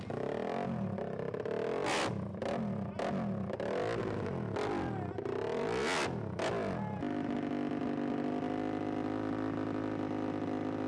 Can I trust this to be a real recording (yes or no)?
yes